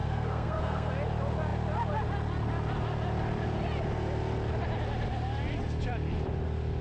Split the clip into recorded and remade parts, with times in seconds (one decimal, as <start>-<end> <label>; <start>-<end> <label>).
0.0-0.9 remade; 0.9-6.8 recorded